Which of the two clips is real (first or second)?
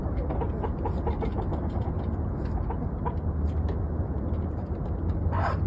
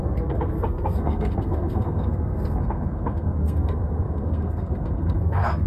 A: first